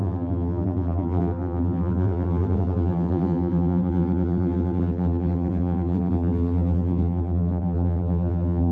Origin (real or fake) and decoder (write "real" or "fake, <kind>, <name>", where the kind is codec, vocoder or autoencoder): fake, vocoder, BigVGAN v2